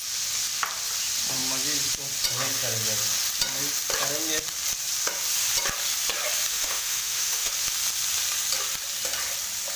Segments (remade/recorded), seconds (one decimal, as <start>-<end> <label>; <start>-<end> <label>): 0.0-6.5 recorded; 6.5-7.5 remade; 7.5-9.8 recorded